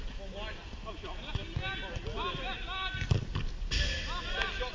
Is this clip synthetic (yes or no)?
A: no